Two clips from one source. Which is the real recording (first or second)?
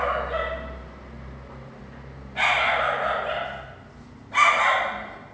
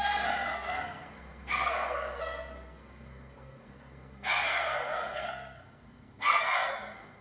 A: first